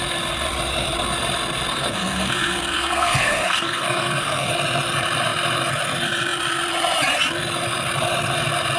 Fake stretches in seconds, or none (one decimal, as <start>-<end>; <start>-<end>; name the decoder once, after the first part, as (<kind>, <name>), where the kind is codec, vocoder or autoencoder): 1.7-4.5 (codec, SNAC)